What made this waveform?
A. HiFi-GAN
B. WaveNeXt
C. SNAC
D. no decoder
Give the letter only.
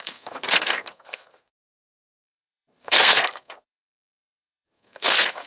C